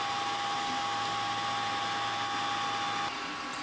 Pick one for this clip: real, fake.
real